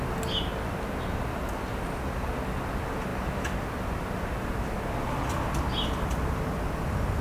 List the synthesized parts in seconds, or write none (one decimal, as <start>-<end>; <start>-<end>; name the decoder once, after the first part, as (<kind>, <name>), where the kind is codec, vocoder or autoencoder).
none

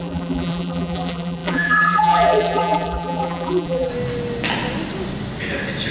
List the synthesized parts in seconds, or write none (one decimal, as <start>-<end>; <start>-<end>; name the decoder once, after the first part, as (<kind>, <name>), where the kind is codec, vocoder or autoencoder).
0.0-3.9 (vocoder, BigVGAN v2)

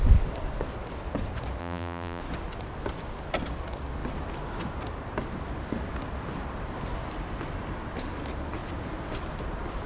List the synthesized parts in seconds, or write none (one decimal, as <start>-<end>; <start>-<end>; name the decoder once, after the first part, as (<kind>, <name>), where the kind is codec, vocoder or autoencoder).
1.6-2.2 (vocoder, BigVGAN v2)

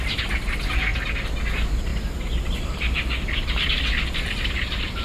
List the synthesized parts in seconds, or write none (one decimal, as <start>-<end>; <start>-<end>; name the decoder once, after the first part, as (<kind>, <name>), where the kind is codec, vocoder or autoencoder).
none